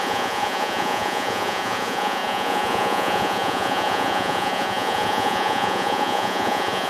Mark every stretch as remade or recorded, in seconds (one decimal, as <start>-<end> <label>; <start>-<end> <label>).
0.0-6.9 remade